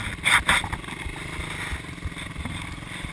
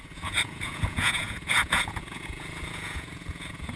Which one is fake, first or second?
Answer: second